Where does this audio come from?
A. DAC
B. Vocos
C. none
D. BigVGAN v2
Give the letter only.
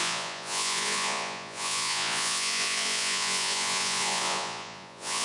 B